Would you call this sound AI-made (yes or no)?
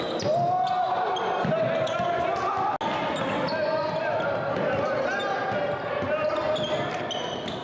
no